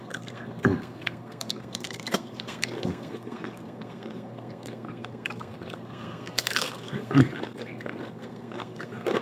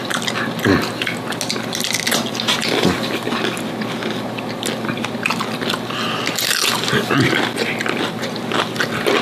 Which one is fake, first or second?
first